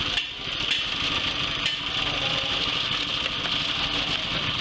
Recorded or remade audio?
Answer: recorded